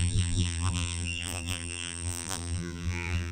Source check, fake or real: fake